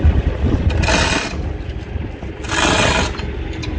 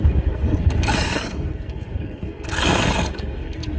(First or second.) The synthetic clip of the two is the second